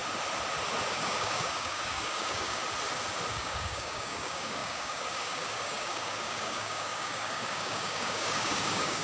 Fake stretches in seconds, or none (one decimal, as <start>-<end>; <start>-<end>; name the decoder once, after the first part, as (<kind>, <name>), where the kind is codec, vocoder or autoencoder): 0.9-2.6 (codec, DAC); 3.3-9.0